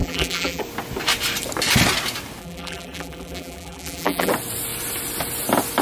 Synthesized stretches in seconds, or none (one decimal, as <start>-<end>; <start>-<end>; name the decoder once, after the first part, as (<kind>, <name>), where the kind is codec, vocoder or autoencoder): 0.0-0.6 (vocoder, BigVGAN v2); 2.4-4.3